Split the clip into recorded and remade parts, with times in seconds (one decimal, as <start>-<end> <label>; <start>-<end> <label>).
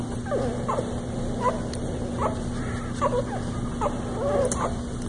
0.0-5.1 recorded